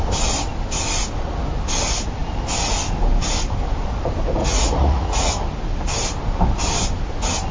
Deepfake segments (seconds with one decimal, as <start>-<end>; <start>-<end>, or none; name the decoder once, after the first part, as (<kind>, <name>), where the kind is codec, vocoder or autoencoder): 4.4-5.3 (vocoder, Vocos)